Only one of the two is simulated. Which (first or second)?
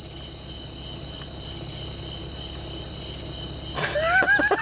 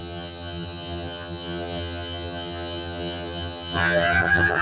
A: second